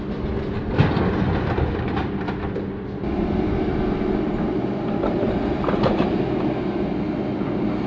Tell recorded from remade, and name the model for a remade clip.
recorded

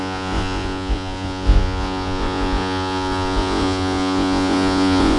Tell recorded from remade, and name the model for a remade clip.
remade, vocoder, Vocos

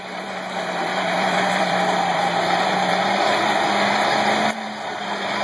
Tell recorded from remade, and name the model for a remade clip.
remade, vocoder, BigVGAN v2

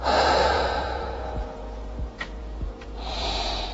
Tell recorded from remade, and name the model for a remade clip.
remade, vocoder, Vocos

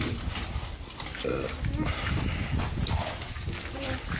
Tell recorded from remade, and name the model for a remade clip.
recorded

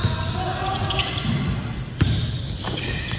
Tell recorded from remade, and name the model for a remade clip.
recorded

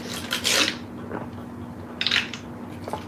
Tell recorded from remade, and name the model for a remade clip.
recorded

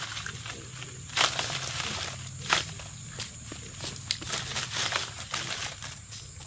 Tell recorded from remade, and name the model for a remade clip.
recorded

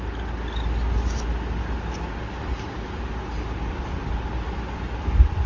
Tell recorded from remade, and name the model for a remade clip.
recorded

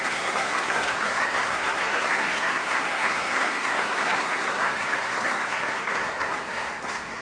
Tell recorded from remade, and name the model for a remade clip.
remade, codec, SNAC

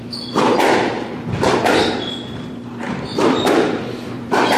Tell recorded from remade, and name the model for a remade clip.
remade, vocoder, BigVGAN v2